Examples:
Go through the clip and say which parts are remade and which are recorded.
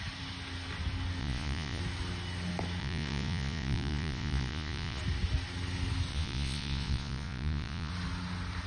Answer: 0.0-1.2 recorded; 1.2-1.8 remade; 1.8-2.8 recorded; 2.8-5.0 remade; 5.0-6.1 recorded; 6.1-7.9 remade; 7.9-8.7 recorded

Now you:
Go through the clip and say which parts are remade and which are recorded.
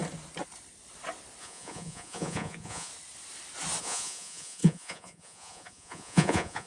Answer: 0.0-1.4 recorded; 1.4-2.9 remade; 2.9-3.8 recorded; 3.8-6.7 remade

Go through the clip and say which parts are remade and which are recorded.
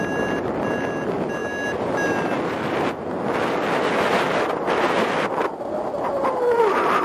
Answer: 0.0-7.0 recorded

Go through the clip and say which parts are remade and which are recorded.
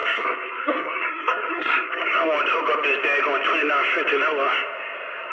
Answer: 0.0-2.0 remade; 2.0-5.3 recorded